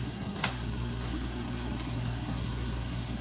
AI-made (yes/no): yes